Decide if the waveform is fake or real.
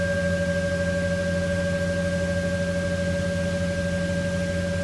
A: real